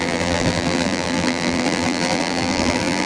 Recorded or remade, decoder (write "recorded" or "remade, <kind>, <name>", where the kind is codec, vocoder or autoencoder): remade, vocoder, BigVGAN v2